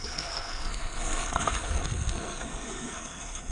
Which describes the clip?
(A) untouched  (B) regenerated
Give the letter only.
B